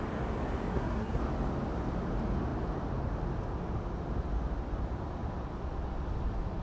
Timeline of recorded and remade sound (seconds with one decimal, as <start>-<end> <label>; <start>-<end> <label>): 0.0-0.7 recorded; 0.7-1.2 remade; 1.2-6.6 recorded